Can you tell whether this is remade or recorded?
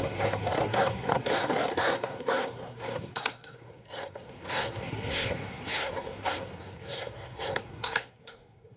remade